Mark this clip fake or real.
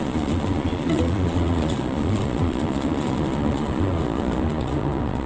fake